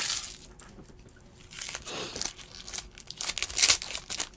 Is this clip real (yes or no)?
yes